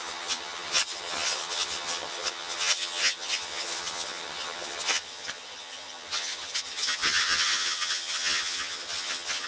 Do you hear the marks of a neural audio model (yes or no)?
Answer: yes